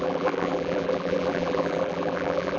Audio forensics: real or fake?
fake